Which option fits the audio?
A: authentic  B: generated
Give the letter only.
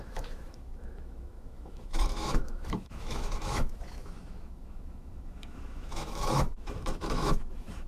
B